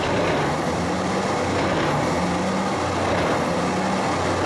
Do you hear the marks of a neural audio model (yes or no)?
no